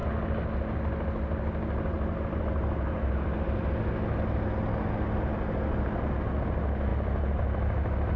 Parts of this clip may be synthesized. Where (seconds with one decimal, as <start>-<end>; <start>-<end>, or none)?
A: none